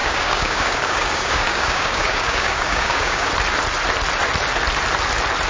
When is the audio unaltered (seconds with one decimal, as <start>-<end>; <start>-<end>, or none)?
3.3-5.5